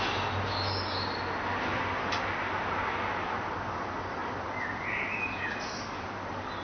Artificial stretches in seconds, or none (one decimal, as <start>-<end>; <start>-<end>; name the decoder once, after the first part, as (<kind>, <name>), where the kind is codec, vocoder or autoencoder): none